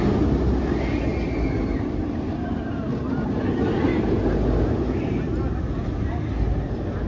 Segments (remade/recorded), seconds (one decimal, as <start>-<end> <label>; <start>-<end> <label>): 0.0-7.1 recorded